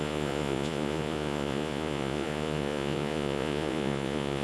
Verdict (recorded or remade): remade